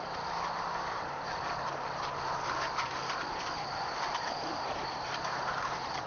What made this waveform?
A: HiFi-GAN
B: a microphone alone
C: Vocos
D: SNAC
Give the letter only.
B